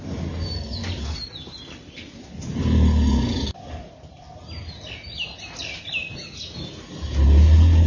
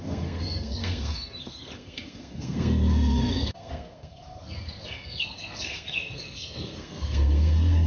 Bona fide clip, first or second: first